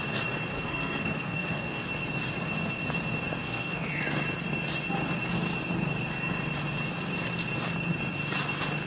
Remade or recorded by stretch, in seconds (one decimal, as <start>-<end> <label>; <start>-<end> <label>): 0.0-0.5 recorded; 0.5-1.9 remade; 1.9-3.4 recorded; 3.4-4.0 remade; 4.0-8.9 recorded